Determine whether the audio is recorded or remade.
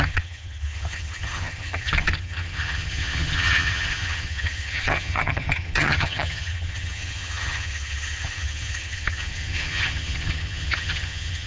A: remade